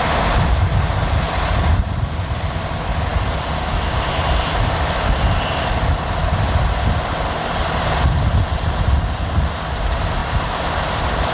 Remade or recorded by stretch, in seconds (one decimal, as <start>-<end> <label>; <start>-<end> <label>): 0.0-11.3 recorded